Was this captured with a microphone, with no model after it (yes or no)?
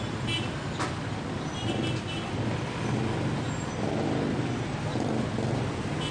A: yes